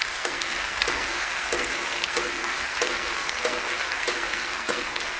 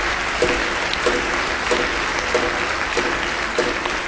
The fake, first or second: first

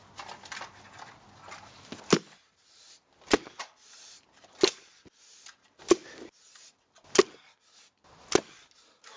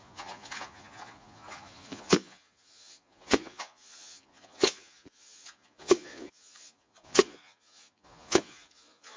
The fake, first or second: second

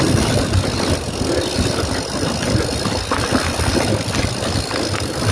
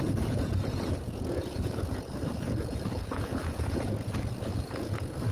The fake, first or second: second